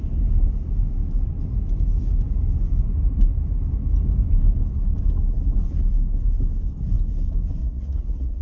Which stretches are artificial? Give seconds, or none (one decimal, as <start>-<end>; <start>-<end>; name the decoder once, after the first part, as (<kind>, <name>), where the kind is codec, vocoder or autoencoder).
7.6-8.4 (vocoder, Vocos)